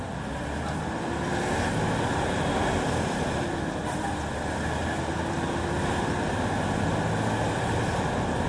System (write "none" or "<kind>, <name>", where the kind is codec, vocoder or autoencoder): none